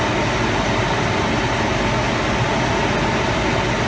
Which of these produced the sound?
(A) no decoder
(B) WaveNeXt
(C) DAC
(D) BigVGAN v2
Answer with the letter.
A